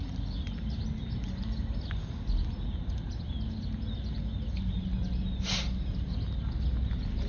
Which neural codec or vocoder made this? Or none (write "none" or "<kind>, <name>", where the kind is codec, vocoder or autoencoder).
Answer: none